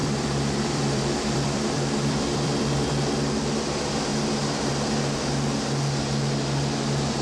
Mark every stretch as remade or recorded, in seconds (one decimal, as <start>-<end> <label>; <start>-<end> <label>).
0.0-2.9 remade; 2.9-7.2 recorded